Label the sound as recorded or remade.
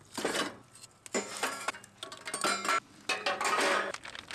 recorded